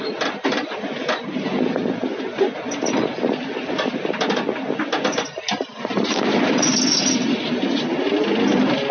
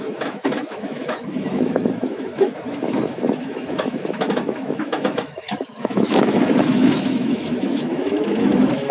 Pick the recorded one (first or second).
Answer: first